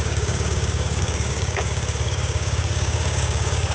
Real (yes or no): no